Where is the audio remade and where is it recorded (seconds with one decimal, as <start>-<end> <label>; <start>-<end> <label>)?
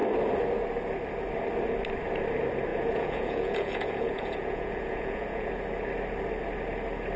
0.0-2.7 recorded; 2.7-5.5 remade; 5.5-7.2 recorded